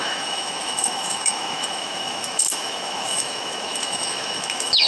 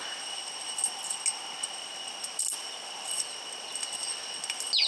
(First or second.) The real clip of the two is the second